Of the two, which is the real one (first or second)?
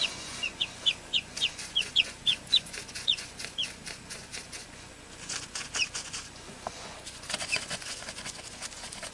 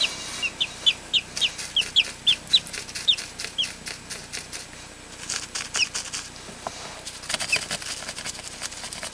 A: second